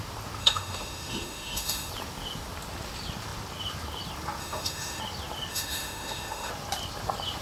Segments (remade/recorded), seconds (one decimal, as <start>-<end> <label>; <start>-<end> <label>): 0.0-0.4 recorded; 0.4-1.9 remade; 1.9-4.4 recorded; 4.4-5.0 remade; 5.0-5.5 recorded; 5.5-6.5 remade; 6.5-7.4 recorded